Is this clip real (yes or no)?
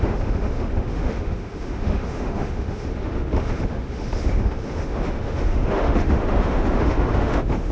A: no